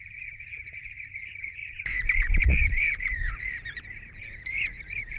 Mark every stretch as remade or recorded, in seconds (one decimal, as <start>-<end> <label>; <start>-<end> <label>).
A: 0.0-3.5 remade; 3.5-4.2 recorded; 4.2-5.2 remade